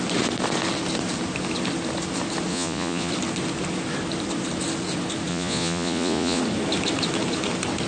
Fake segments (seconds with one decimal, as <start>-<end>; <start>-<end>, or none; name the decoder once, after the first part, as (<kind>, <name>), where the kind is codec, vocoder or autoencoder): 2.5-3.1 (vocoder, Vocos); 5.3-6.4